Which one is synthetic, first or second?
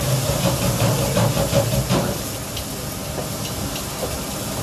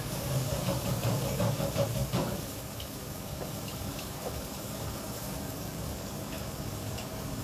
second